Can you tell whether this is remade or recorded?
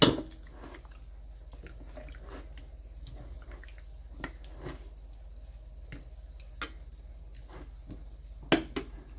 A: recorded